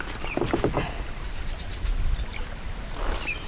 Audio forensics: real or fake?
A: real